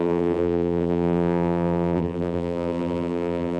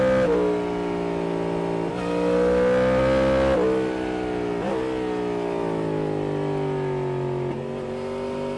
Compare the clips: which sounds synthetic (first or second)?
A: first